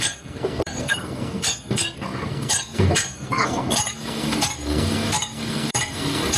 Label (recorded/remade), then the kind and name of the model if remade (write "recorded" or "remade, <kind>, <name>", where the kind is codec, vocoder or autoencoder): remade, codec, SNAC